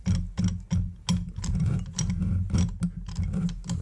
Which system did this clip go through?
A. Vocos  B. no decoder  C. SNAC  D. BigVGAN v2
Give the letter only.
B